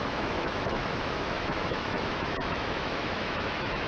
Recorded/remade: remade